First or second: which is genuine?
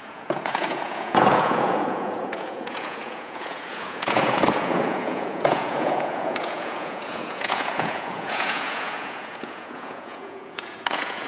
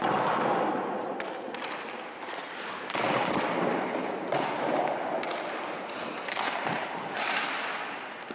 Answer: second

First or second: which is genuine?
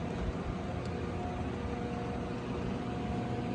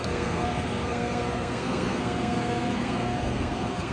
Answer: first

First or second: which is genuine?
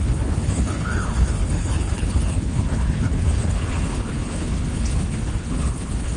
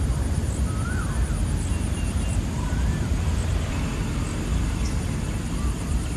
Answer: second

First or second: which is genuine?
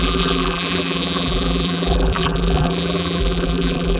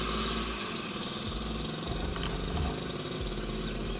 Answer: second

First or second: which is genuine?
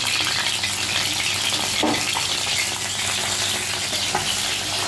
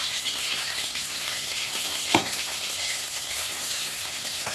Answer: first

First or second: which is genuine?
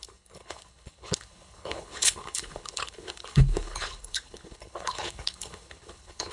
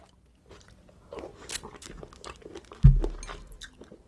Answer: second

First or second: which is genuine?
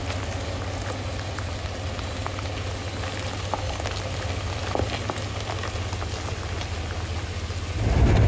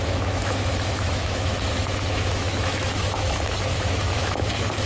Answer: first